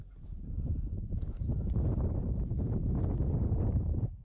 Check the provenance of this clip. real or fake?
fake